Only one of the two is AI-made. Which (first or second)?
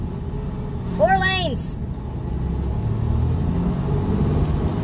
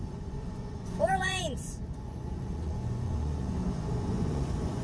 second